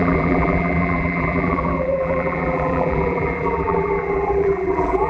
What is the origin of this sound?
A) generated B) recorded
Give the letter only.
A